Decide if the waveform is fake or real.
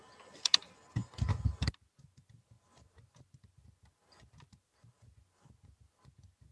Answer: real